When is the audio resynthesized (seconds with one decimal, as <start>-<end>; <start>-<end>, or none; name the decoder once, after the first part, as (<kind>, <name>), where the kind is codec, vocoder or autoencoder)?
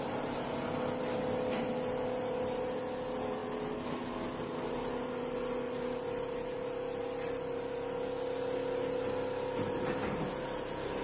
none